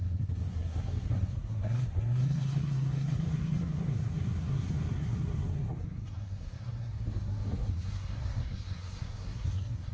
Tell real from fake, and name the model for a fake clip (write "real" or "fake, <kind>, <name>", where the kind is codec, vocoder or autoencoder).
fake, codec, SNAC